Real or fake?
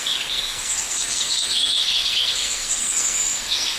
fake